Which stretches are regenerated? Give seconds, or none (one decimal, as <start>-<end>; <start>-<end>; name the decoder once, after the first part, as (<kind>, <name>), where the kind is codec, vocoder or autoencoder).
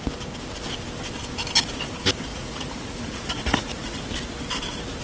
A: 2.3-4.0 (vocoder, Vocos)